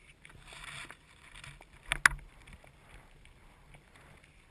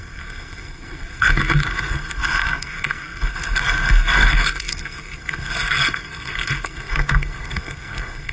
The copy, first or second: second